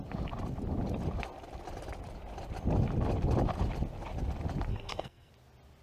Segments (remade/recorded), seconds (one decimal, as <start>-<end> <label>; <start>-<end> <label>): 0.0-4.7 recorded; 4.7-5.3 remade; 5.3-5.8 recorded